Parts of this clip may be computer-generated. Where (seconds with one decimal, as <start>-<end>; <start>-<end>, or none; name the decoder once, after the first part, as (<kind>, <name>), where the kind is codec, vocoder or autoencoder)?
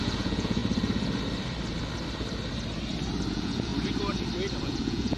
0.0-0.6 (vocoder, Vocos); 3.3-3.7; 4.6-5.2